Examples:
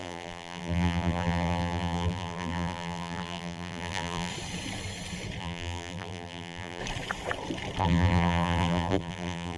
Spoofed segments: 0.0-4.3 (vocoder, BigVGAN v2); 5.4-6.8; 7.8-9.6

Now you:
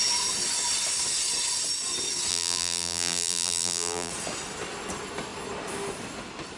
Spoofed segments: 2.3-4.1 (vocoder, BigVGAN v2)

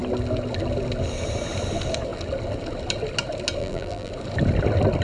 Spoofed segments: 3.6-4.1 (vocoder, BigVGAN v2)